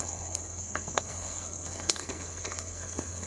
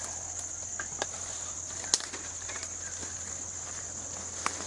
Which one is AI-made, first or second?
first